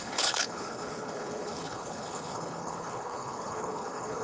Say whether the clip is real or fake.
fake